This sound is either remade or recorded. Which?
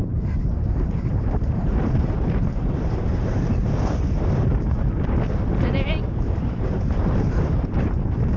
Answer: remade